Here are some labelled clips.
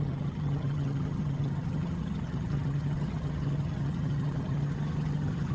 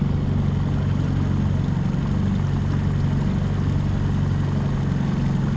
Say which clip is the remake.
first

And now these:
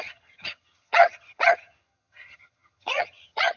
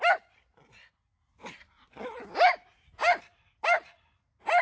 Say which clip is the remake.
first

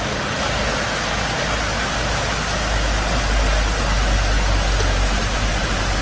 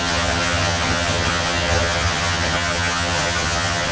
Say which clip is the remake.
second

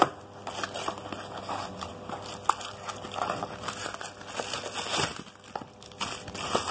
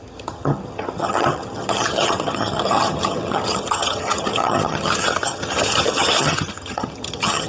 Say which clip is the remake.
second